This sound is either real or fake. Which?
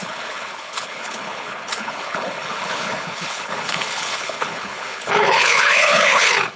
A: fake